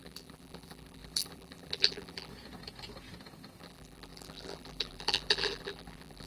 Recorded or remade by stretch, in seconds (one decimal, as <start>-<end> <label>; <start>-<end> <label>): 0.0-2.3 remade; 2.3-3.6 recorded; 3.6-6.3 remade